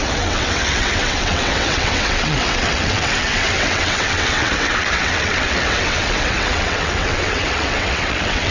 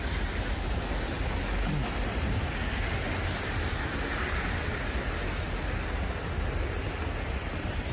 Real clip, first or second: second